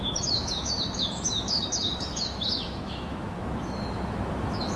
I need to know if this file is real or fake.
fake